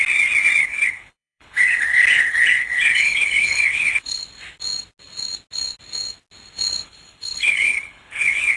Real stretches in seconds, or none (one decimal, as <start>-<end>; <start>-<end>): 0.0-0.6; 4.2-6.8